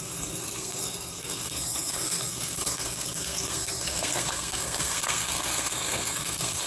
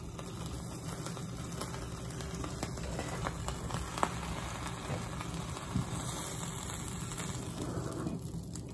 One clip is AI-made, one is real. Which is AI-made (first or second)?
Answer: first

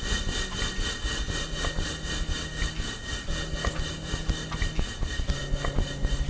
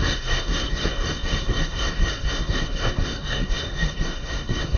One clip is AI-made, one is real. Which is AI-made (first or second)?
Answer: second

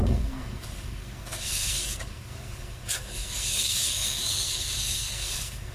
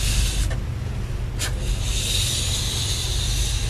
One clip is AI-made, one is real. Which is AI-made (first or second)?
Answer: first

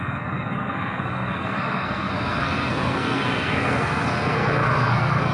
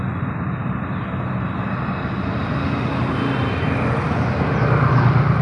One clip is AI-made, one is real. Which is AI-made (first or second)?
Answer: first